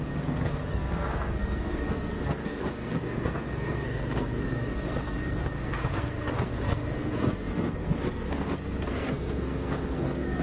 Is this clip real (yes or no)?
no